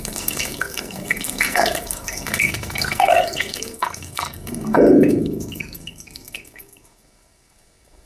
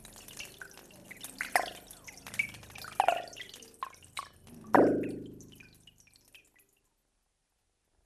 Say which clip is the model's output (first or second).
first